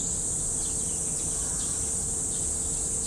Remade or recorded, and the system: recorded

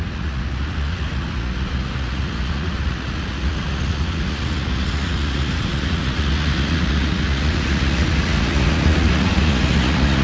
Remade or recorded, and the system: remade, vocoder, Vocos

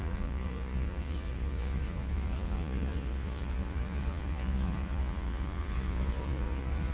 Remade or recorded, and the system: remade, vocoder, Vocos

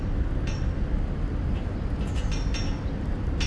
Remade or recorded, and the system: recorded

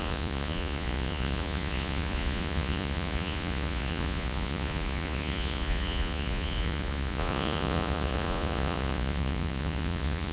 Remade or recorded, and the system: remade, vocoder, Vocos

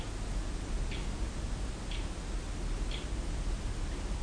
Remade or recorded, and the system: recorded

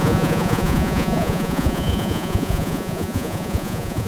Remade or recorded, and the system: remade, vocoder, Vocos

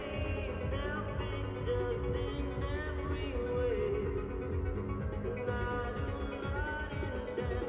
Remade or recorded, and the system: recorded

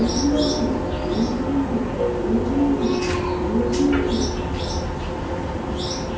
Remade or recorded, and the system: recorded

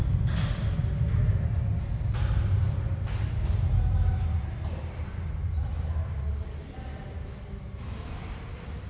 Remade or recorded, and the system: recorded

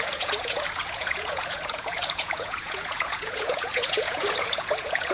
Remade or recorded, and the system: remade, vocoder, Vocos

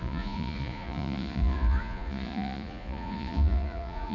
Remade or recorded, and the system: remade, vocoder, Vocos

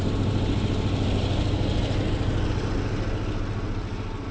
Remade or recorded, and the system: recorded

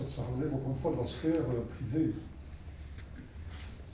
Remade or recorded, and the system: recorded